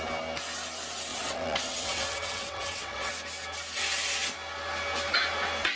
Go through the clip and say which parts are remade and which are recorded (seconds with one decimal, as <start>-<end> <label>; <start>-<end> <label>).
0.0-1.1 recorded; 1.1-3.1 remade; 3.1-5.8 recorded